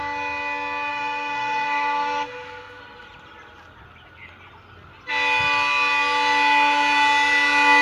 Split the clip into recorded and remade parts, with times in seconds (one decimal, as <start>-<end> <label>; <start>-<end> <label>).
0.0-0.9 recorded; 0.9-2.8 remade; 2.8-7.8 recorded